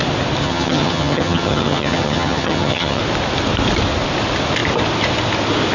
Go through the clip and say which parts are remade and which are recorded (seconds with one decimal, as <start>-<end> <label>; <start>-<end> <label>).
0.0-0.4 recorded; 0.4-3.0 remade; 3.0-5.7 recorded